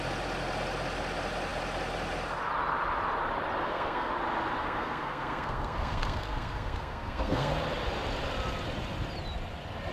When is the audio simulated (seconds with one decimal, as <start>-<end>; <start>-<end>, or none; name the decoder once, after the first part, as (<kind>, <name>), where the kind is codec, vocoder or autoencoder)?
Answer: 3.6-4.1 (codec, SNAC); 4.6-7.5